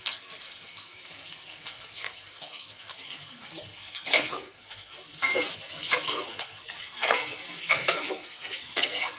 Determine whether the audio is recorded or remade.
remade